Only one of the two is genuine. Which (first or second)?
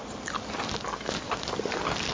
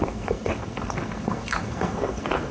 first